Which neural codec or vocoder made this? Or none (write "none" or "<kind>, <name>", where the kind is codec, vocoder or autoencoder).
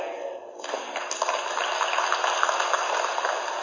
none